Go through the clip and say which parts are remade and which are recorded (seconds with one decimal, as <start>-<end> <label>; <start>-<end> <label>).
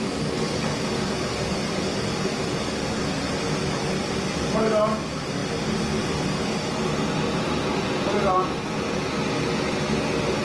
0.0-10.4 recorded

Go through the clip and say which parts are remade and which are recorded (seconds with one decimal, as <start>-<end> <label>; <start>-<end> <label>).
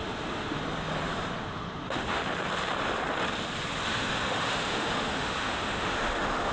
0.0-0.6 remade; 0.6-1.4 recorded; 1.4-2.2 remade; 2.2-3.8 recorded; 3.8-6.5 remade